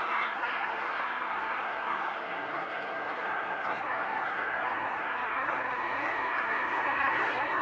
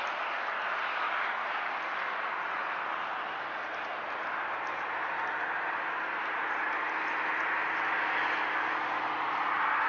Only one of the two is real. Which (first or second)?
second